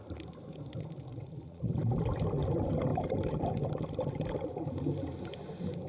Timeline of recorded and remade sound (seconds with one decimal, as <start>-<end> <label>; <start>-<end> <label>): 0.0-1.1 recorded; 1.1-1.8 remade; 1.8-5.9 recorded